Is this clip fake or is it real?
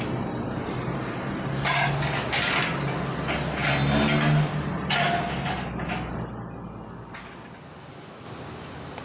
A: real